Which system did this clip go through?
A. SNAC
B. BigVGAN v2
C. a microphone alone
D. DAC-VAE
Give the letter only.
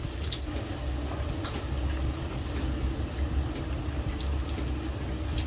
C